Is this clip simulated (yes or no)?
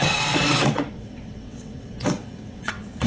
yes